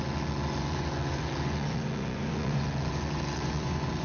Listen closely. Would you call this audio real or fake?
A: fake